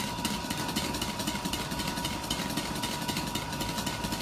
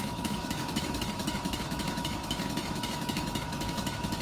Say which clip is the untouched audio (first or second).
first